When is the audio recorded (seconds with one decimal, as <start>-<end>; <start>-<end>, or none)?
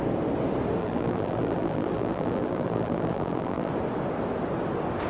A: 0.0-0.8; 3.7-5.1